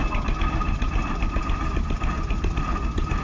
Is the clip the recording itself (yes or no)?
yes